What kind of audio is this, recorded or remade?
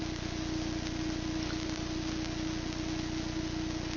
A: recorded